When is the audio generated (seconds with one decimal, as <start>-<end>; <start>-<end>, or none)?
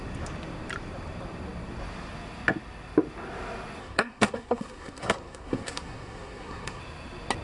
3.8-6.8